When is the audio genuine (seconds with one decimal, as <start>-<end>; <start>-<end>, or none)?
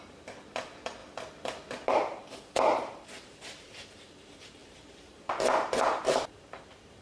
1.0-1.7